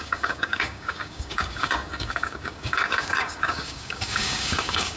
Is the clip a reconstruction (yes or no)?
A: yes